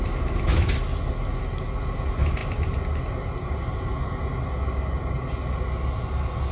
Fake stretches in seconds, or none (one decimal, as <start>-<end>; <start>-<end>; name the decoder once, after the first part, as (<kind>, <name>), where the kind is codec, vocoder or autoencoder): none